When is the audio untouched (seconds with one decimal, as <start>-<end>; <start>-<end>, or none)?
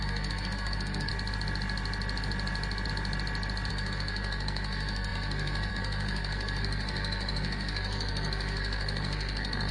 1.1-3.7